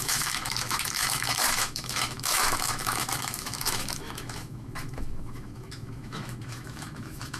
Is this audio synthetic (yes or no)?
yes